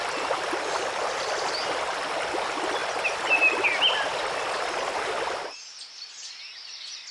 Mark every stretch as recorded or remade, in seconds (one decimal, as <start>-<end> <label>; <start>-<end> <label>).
0.0-7.1 recorded